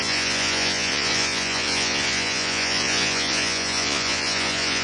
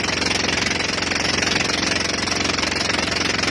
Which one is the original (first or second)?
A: second